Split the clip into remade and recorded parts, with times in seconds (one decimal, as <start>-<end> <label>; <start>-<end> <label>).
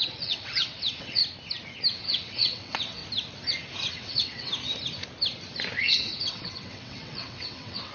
0.0-1.2 remade; 1.2-1.9 recorded; 1.9-3.0 remade; 3.0-3.9 recorded; 3.9-4.5 remade; 4.5-5.8 recorded; 5.8-7.9 remade